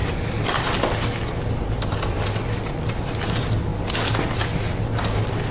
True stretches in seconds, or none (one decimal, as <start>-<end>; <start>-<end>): 0.0-5.5